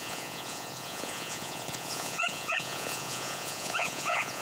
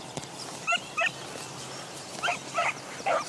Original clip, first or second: second